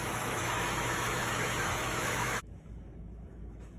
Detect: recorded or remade remade